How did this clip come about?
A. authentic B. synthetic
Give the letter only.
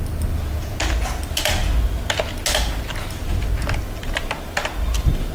A